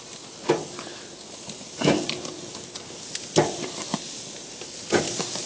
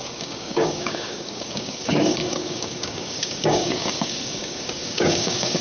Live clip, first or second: first